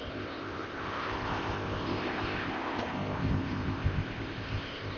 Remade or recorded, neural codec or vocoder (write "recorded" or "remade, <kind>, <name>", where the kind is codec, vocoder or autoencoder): remade, codec, ZipCodec